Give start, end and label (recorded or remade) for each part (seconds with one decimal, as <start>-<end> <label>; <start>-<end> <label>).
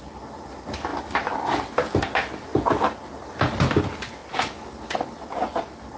0.0-6.0 recorded